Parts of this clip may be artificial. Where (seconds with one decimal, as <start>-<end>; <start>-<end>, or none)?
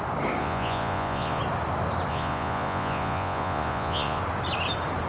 0.4-1.4; 2.1-4.2